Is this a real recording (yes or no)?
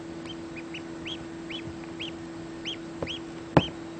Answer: yes